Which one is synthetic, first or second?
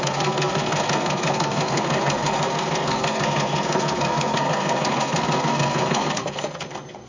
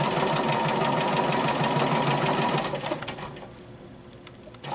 first